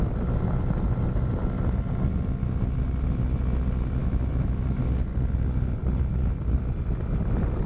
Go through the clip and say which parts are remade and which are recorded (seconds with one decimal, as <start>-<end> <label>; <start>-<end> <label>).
0.0-4.0 recorded; 4.0-4.8 remade; 4.8-7.7 recorded